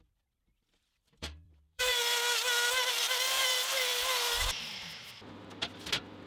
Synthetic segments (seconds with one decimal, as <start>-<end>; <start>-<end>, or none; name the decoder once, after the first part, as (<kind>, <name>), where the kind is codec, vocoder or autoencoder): 0.0-2.0 (vocoder, BigVGAN v2); 2.9-3.9